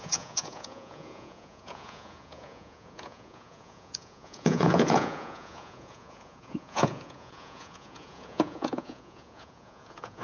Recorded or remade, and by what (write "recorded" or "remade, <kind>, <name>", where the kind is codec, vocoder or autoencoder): remade, vocoder, Vocos